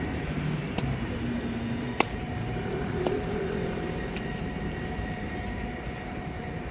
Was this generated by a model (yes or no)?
yes